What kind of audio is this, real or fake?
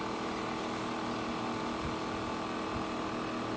real